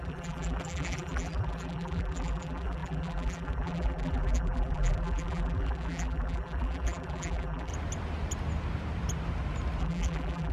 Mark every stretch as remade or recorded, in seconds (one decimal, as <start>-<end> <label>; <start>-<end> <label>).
0.0-7.7 remade; 7.7-9.8 recorded; 9.8-10.5 remade